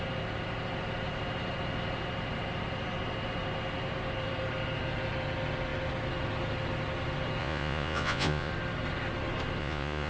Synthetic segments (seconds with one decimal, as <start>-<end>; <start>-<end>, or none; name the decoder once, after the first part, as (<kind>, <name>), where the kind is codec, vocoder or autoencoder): 7.4-8.5 (vocoder, Vocos); 9.6-10.1